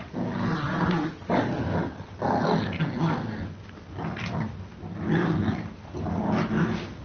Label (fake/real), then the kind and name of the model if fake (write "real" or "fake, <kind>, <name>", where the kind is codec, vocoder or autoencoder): real